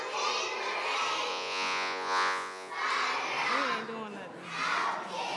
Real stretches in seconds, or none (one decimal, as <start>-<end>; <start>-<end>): 0.0-1.3; 2.7-5.4